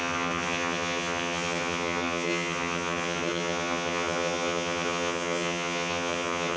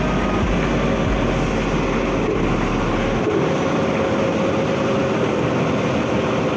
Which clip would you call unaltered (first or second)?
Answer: second